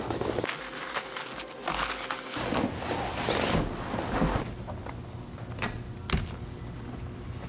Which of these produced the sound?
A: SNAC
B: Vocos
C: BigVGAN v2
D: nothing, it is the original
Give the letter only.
D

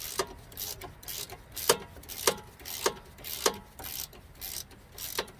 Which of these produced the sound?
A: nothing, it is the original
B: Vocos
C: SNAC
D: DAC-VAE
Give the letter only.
A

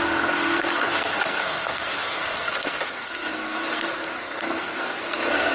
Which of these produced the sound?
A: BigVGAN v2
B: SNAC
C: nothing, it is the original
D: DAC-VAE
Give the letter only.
B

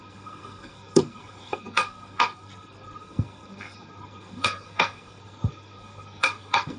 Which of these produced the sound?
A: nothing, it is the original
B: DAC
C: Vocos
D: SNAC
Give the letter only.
D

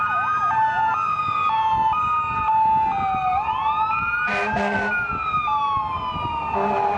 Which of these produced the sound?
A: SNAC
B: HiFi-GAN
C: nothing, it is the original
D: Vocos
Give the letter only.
C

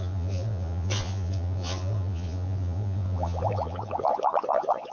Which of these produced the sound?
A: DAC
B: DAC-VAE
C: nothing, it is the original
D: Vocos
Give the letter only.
D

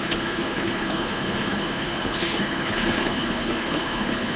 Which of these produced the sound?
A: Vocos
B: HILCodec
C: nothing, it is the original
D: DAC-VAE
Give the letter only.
B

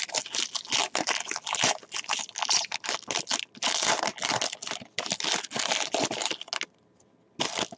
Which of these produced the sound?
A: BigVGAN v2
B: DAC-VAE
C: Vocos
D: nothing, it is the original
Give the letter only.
D